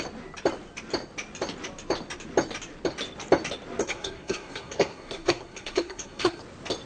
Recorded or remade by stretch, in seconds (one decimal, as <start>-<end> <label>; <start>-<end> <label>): 0.0-3.8 recorded; 3.8-6.4 remade; 6.4-6.9 recorded